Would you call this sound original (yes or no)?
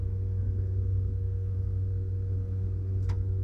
no